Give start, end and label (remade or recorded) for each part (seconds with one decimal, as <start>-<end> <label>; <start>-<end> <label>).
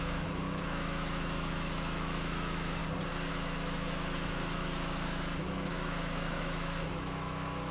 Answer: 0.0-2.8 remade; 2.8-3.3 recorded; 3.3-7.7 remade